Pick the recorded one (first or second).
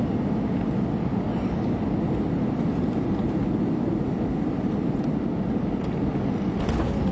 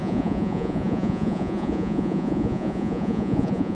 first